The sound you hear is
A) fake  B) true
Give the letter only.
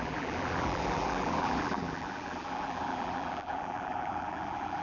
A